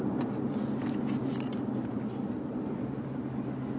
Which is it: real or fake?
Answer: real